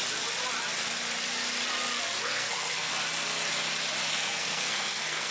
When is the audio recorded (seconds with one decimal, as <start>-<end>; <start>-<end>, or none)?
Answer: 0.0-2.2; 2.9-4.1